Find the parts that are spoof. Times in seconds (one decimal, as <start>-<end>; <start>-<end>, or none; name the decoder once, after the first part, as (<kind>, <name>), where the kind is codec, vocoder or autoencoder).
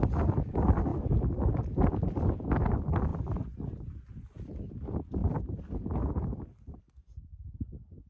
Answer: 0.9-2.1 (vocoder, BigVGAN v2); 3.1-4.5; 5.2-6.9